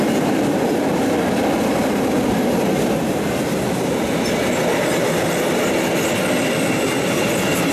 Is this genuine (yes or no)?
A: yes